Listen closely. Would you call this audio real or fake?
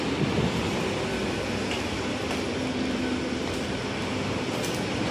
real